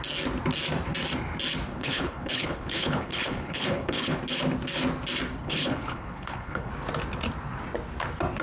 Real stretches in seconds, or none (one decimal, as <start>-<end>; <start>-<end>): 0.0-1.7; 4.2-5.4; 6.7-8.4